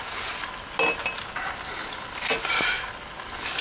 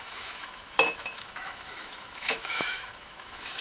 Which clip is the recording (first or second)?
first